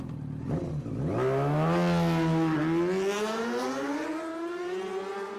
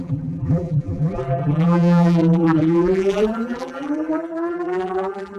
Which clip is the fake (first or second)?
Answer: second